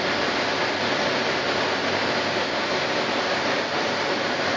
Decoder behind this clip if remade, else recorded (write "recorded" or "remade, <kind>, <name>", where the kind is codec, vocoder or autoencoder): recorded